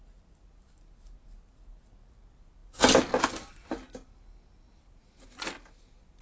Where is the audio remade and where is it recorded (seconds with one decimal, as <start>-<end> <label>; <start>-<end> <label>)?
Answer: 0.0-6.2 recorded